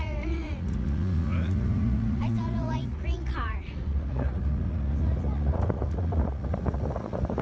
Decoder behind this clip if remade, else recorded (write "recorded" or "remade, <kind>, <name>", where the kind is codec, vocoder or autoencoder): remade, vocoder, Vocos